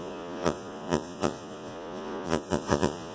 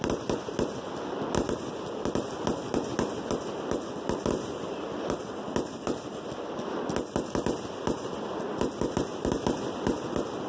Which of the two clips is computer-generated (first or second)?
first